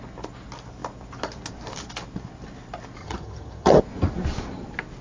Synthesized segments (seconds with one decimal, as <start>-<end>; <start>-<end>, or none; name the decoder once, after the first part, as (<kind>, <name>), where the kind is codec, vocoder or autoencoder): 3.0-3.8 (vocoder, HiFi-GAN)